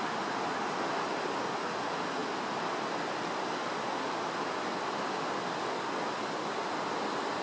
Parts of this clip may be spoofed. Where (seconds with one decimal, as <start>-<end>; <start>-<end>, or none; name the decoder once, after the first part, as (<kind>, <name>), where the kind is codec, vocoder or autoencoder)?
none